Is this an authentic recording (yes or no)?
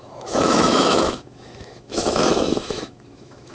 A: no